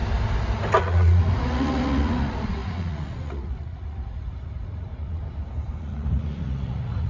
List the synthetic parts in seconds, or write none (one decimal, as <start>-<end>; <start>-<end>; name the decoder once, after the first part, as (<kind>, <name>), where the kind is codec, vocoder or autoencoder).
0.8-5.2 (vocoder, Vocos); 5.8-7.1